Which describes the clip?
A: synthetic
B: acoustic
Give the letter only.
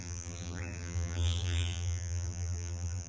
A